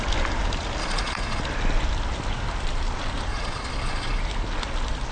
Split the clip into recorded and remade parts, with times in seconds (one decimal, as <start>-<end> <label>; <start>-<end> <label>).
0.0-0.8 recorded; 0.8-1.4 remade; 1.4-3.3 recorded; 3.3-4.2 remade; 4.2-5.1 recorded